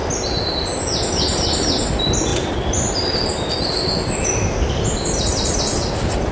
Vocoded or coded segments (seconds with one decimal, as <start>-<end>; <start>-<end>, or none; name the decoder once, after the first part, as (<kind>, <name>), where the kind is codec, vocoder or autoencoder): none